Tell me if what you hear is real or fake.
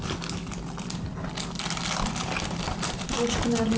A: real